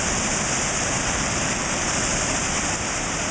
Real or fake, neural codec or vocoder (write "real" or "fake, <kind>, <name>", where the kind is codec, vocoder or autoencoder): real